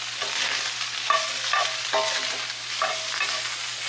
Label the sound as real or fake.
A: real